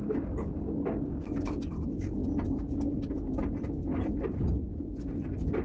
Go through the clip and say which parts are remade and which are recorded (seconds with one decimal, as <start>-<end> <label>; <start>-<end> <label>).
0.0-5.6 recorded